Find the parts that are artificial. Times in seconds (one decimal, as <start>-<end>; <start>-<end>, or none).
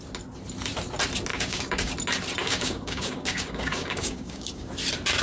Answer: 1.3-1.9; 2.4-4.7